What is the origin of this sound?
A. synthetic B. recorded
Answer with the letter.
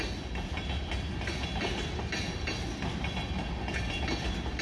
B